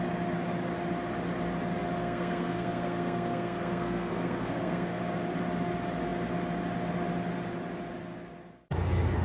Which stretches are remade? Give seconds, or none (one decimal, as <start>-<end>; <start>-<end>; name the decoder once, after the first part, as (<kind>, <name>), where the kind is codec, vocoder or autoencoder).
2.0-5.0 (codec, SNAC)